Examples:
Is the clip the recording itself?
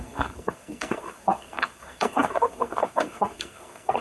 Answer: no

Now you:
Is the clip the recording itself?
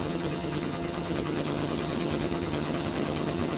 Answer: no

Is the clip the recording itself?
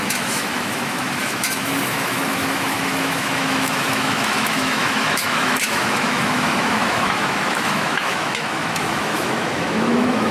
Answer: no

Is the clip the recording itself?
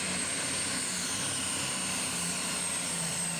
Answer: yes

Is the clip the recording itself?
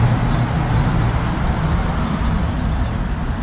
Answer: yes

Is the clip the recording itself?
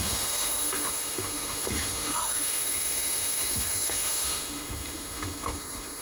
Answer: no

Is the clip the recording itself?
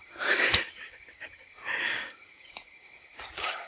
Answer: no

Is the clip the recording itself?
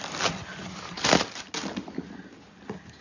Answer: yes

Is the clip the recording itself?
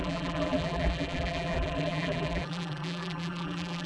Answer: no